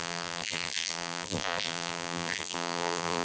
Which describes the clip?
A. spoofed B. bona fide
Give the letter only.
A